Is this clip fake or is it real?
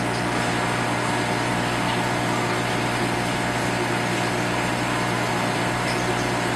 real